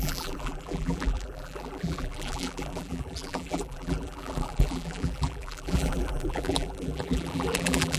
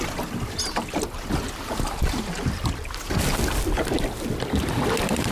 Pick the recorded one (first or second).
second